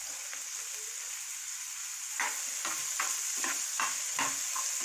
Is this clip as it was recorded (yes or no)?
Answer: yes